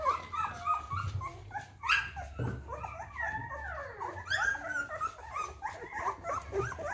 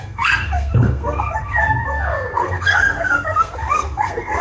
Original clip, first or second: first